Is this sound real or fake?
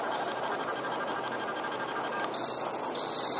real